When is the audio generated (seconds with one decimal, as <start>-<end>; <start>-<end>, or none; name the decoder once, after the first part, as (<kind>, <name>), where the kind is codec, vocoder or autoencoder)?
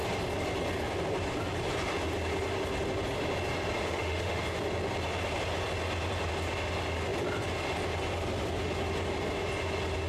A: 3.8-4.4 (autoencoder, DAC-VAE)